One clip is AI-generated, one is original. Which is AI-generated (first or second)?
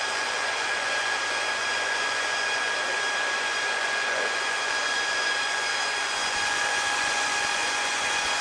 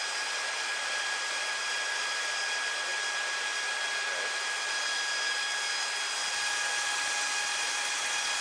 first